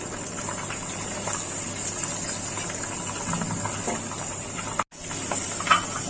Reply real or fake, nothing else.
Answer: real